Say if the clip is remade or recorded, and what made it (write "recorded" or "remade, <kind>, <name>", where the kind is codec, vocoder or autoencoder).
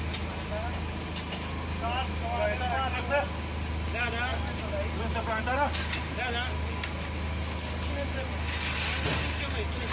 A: recorded